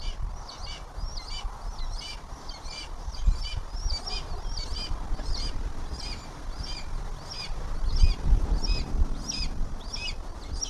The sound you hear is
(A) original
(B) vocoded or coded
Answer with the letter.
A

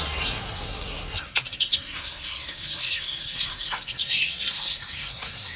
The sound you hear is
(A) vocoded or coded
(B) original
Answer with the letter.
A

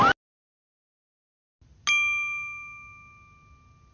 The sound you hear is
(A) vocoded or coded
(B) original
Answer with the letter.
B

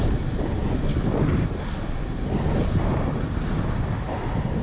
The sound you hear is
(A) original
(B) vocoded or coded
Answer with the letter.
B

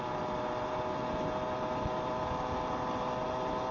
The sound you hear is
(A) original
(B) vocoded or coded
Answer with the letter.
A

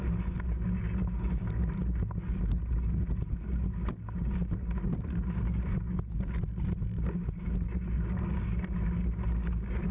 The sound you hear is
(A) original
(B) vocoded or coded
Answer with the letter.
A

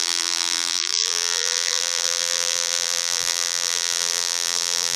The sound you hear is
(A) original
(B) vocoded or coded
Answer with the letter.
B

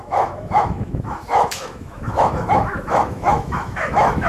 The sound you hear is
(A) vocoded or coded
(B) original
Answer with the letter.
A